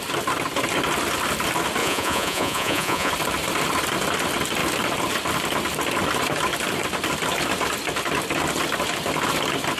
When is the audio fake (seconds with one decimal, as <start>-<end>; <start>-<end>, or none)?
1.8-3.1